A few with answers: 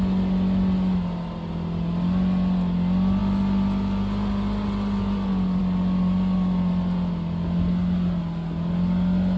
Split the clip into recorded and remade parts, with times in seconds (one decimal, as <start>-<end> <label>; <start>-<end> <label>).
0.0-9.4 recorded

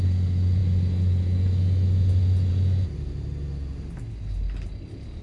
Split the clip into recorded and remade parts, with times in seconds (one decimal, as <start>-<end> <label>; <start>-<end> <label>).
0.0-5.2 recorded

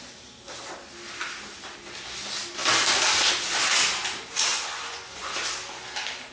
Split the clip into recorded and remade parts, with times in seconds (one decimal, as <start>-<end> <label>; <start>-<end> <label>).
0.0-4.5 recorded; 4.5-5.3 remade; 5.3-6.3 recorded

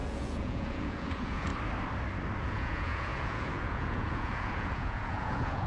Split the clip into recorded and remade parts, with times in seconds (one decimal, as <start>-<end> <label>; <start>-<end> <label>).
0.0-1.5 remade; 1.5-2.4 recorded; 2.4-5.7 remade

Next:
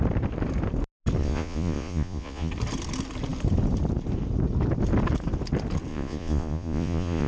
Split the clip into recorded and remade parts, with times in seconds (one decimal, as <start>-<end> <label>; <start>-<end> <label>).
0.0-1.2 recorded; 1.2-2.5 remade; 2.5-5.9 recorded; 5.9-7.3 remade

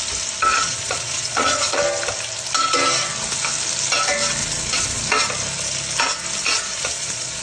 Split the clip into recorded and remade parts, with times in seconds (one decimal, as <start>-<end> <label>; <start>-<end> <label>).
0.0-0.5 recorded; 0.5-1.8 remade; 1.8-4.4 recorded; 4.4-5.0 remade; 5.0-6.4 recorded; 6.4-7.4 remade